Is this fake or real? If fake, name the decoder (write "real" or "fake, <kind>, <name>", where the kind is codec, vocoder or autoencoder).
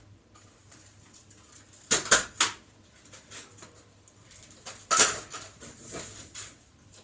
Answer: real